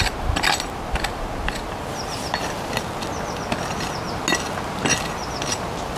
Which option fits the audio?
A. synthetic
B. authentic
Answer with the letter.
B